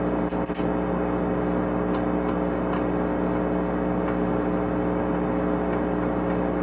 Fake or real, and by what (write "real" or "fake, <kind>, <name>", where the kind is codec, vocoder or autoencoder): real